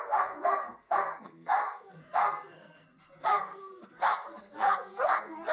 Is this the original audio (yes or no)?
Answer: no